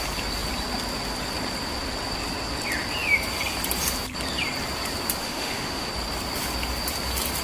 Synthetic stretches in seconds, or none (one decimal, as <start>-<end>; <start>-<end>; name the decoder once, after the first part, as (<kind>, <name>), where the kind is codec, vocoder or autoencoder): 5.2-5.9 (autoencoder, DAC-VAE)